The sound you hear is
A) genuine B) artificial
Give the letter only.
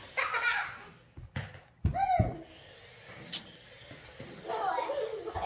A